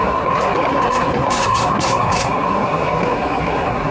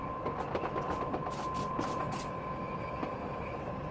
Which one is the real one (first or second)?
second